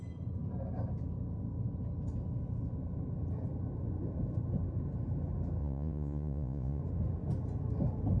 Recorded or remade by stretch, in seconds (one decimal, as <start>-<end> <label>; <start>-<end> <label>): 0.0-5.6 recorded; 5.6-6.8 remade; 6.8-8.2 recorded